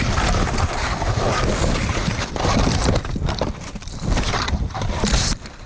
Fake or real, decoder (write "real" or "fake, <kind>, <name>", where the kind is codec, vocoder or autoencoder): fake, vocoder, BigVGAN v2